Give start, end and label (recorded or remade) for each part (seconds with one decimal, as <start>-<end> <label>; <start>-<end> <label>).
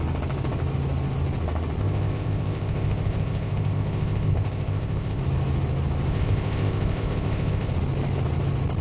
0.0-1.8 recorded; 1.8-5.2 remade; 5.2-6.1 recorded; 6.1-7.7 remade; 7.7-8.8 recorded